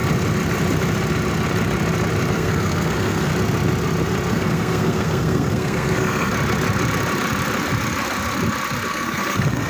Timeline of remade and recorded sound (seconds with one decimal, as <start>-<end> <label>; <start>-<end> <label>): 0.0-2.3 recorded; 2.3-3.3 remade; 3.3-4.3 recorded; 4.3-6.3 remade; 6.3-8.9 recorded; 8.9-9.7 remade